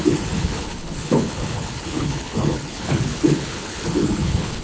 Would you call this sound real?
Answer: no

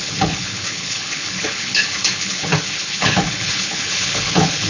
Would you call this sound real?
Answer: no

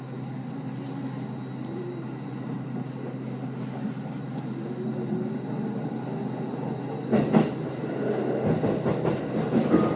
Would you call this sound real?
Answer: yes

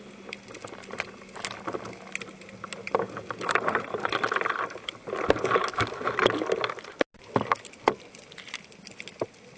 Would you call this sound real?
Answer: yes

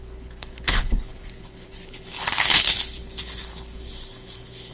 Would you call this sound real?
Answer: no